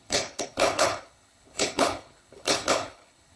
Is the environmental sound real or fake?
fake